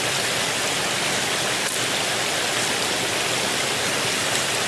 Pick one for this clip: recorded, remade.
recorded